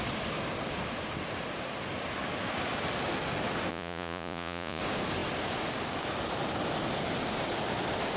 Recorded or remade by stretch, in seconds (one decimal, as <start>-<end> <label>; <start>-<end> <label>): 0.0-3.7 recorded; 3.7-4.8 remade; 4.8-8.2 recorded